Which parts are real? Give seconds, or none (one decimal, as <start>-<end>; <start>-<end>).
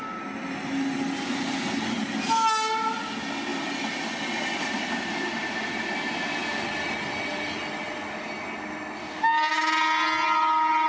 0.0-3.5; 5.9-10.9